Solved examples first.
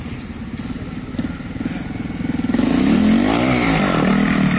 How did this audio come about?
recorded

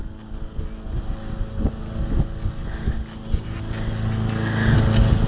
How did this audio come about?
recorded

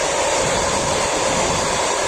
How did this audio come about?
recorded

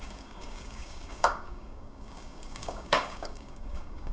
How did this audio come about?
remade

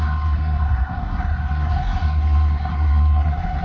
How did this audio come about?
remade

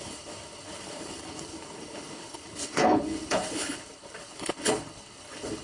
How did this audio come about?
remade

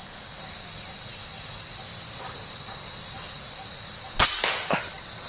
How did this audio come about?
recorded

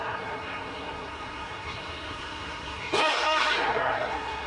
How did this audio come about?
remade